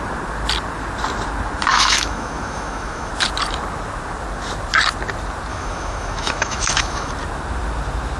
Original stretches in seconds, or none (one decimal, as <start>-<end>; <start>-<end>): 0.0-1.7; 3.1-5.5; 7.1-8.2